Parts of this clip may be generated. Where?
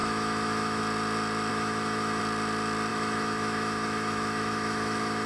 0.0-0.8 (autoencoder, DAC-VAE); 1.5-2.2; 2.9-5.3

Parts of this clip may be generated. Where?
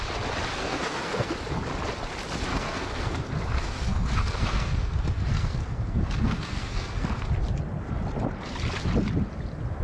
0.6-1.3 (codec, SNAC); 2.5-7.3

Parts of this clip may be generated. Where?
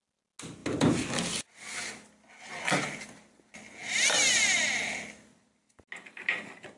none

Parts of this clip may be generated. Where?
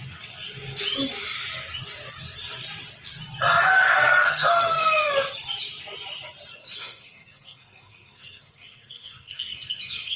3.7-5.1 (codec, SNAC); 6.6-10.2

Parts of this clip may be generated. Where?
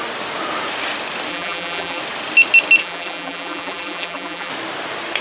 1.3-2.0 (vocoder, BigVGAN v2); 2.8-4.5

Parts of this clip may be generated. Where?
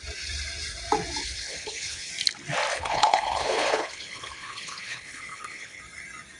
1.2-2.1 (codec, HILCodec); 2.7-5.8